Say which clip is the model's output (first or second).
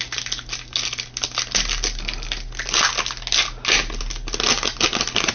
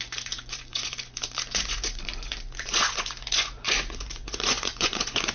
second